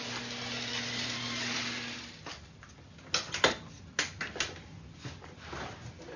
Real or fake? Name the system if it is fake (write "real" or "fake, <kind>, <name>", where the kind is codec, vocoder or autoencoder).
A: real